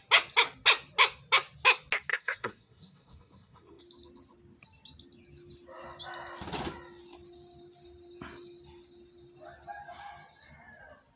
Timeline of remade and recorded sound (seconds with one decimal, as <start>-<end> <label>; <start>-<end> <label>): 0.0-2.1 recorded; 2.1-3.8 remade; 3.8-11.2 recorded